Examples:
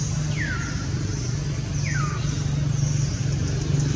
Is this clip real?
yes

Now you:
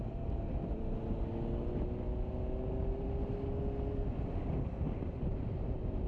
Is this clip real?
yes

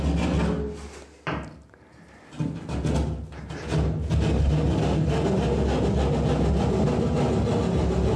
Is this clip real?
yes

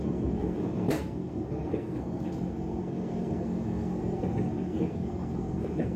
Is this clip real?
no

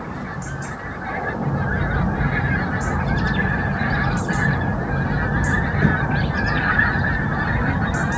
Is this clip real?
yes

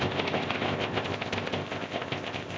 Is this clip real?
no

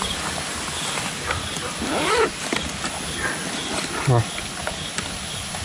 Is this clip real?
yes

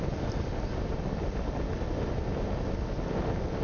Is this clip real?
yes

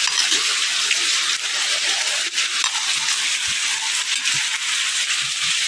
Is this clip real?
yes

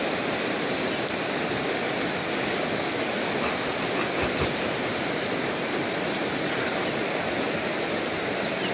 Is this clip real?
yes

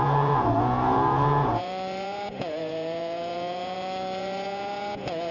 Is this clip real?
no